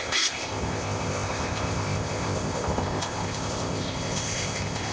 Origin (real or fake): fake